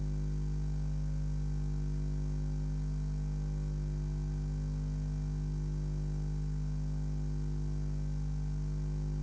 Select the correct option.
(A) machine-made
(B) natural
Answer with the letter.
B